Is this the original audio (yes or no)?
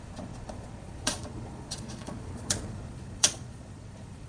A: no